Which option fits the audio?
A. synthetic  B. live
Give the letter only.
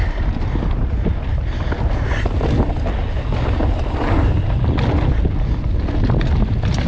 B